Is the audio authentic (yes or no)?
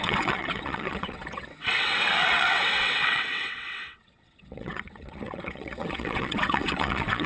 no